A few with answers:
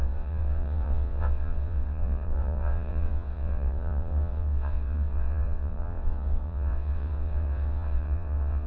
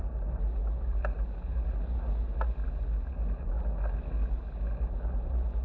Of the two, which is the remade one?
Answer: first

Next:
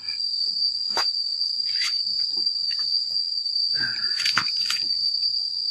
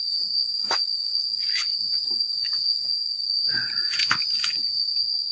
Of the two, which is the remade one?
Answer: first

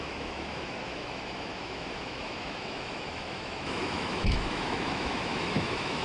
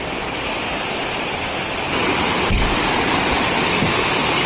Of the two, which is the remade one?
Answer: first